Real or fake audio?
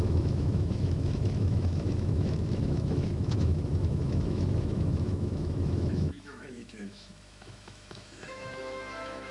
fake